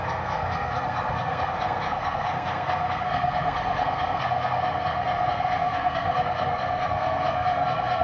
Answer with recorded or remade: remade